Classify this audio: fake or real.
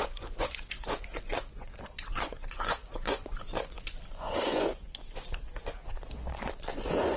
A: fake